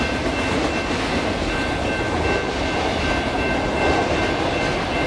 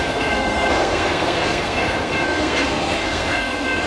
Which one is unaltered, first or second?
first